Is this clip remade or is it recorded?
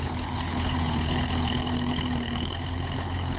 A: remade